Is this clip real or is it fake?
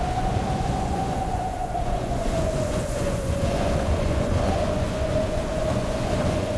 fake